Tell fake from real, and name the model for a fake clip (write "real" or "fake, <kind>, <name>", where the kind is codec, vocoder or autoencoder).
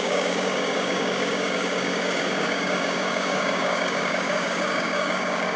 fake, codec, DAC